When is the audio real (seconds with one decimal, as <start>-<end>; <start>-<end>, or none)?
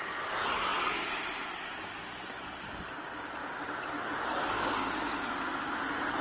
0.0-6.2